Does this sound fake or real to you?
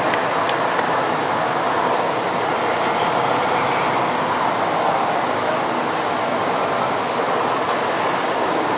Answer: real